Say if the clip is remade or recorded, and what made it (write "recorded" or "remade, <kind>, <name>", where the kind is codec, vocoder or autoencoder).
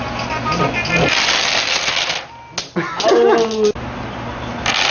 recorded